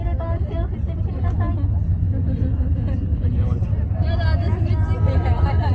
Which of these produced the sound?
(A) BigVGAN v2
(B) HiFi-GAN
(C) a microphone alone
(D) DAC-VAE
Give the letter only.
C